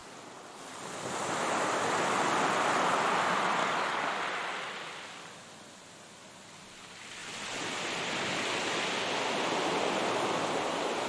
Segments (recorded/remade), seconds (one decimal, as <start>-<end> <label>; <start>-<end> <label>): 0.0-3.6 recorded; 3.6-4.2 remade; 4.2-11.1 recorded